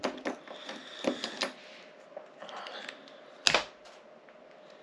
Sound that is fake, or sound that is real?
real